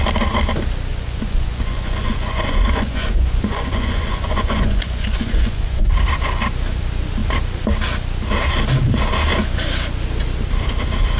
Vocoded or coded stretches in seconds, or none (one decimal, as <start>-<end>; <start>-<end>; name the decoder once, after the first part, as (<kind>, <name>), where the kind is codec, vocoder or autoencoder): 0.9-5.9 (vocoder, Vocos)